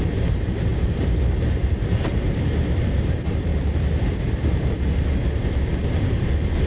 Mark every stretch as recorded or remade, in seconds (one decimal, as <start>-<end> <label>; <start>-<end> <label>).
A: 0.0-3.5 remade; 3.5-6.0 recorded; 6.0-6.7 remade